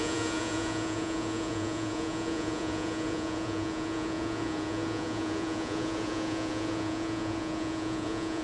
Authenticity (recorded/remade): remade